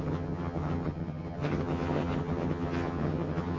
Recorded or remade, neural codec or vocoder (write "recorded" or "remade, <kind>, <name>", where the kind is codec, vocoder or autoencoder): remade, vocoder, HiFi-GAN